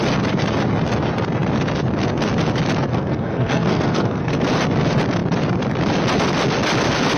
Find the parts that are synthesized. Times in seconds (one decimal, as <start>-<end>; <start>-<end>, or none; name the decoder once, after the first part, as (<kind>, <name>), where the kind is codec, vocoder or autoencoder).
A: 2.9-4.3 (codec, SNAC)